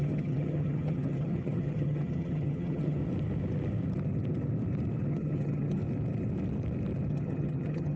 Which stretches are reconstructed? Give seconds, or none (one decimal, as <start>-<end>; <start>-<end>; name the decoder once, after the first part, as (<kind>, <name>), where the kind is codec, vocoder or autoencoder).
0.0-3.0 (vocoder, HiFi-GAN); 5.1-5.8; 7.1-8.0